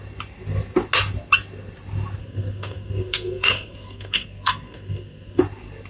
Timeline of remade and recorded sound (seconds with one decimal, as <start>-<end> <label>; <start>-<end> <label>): 0.0-2.2 recorded; 2.2-5.4 remade; 5.4-5.9 recorded